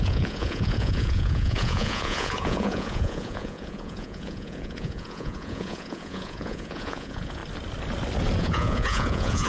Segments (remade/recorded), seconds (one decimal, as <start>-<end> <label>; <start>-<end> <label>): 0.0-7.4 remade; 7.4-8.4 recorded; 8.4-9.5 remade